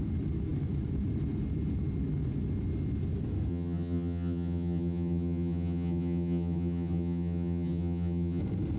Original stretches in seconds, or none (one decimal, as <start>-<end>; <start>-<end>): 0.0-3.5; 8.4-8.8